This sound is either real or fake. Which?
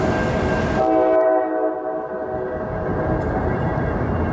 real